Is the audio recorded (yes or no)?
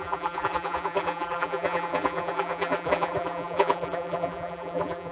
no